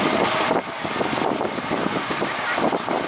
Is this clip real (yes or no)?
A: yes